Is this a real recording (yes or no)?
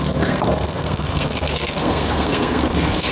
no